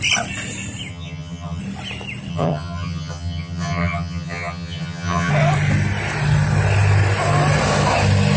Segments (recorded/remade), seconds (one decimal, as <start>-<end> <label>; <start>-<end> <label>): 0.0-0.9 recorded; 0.9-1.6 remade; 1.6-2.3 recorded; 2.3-5.3 remade; 5.3-8.4 recorded